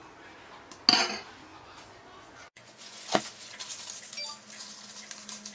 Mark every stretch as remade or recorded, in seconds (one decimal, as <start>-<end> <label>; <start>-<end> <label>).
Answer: 0.0-1.5 recorded; 1.5-3.3 remade; 3.3-5.5 recorded